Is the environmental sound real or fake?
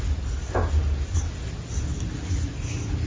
real